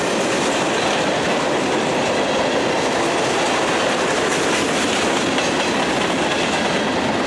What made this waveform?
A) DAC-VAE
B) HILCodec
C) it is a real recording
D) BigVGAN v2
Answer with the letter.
C